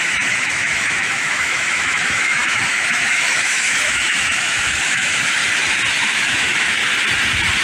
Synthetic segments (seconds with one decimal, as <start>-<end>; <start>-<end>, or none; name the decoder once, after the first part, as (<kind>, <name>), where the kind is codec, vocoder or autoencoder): 0.0-5.4 (autoencoder, DAC-VAE); 5.9-6.8